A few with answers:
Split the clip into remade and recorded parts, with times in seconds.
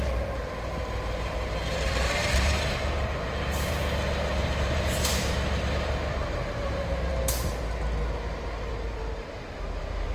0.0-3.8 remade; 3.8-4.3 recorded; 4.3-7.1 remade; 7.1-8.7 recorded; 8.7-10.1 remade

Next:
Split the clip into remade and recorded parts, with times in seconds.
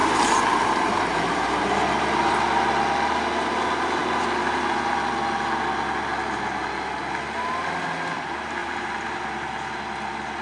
0.0-1.7 remade; 1.7-8.6 recorded; 8.6-9.7 remade; 9.7-10.4 recorded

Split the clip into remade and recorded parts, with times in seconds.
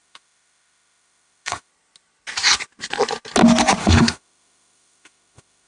0.0-1.7 remade; 1.7-3.8 recorded; 3.8-5.7 remade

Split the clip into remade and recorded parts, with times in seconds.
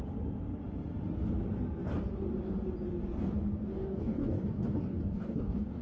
0.0-3.6 recorded; 3.6-5.8 remade